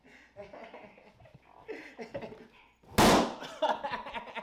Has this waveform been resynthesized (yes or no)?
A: no